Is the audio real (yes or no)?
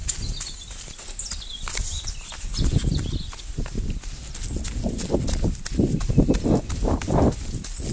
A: yes